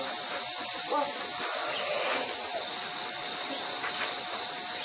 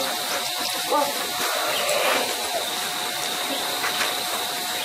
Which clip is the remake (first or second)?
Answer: second